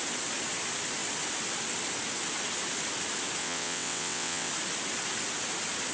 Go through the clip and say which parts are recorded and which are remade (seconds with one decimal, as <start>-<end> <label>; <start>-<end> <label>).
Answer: 0.0-3.4 recorded; 3.4-4.5 remade; 4.5-5.9 recorded